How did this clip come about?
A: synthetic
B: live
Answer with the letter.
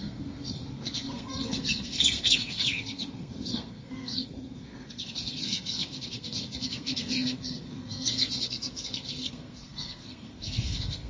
A